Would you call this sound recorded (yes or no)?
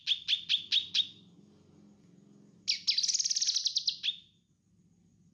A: yes